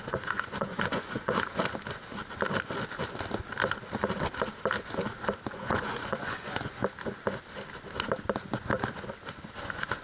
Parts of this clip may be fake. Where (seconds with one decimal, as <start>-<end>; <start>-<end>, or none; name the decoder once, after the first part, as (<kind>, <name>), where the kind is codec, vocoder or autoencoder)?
0.0-1.5 (vocoder, Vocos); 5.5-6.8; 9.6-10.0